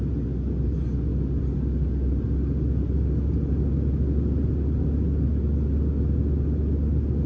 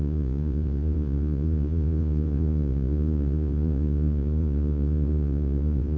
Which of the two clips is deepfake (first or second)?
second